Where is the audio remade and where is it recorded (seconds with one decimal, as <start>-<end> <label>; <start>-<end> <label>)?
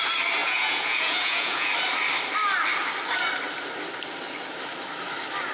0.0-0.4 recorded; 0.4-1.7 remade; 1.7-5.5 recorded